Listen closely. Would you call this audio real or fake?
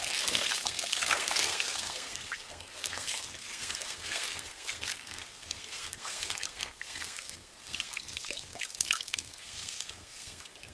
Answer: fake